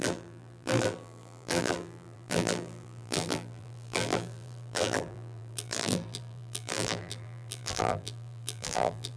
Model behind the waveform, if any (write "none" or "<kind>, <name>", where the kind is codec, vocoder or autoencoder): vocoder, BigVGAN v2